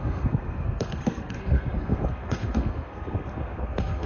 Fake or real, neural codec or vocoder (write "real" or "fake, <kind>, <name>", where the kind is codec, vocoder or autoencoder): fake, codec, SNAC